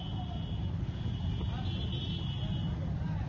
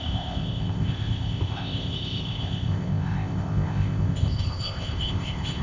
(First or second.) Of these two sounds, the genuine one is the first